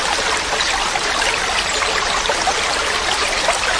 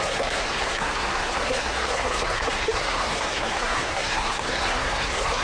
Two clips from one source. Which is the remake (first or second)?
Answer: second